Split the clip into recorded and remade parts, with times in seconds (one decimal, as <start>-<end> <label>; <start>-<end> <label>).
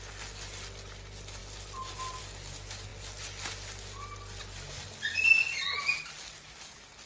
0.0-7.1 recorded